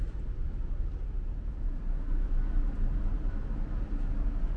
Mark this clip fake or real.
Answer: real